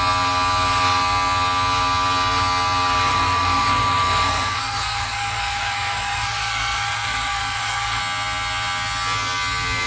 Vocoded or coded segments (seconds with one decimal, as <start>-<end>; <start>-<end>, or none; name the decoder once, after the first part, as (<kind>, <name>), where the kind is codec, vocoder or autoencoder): 3.1-8.0 (codec, SNAC)